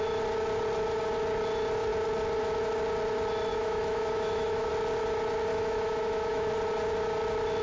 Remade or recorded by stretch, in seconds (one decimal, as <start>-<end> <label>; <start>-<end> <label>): 0.0-3.5 recorded; 3.5-4.7 remade; 4.7-5.5 recorded; 5.5-6.5 remade; 6.5-7.6 recorded